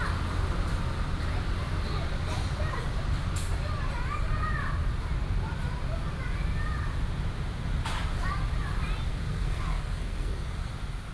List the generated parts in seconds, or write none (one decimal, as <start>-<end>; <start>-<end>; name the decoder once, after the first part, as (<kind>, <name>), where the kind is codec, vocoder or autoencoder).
9.1-10.7 (codec, SNAC)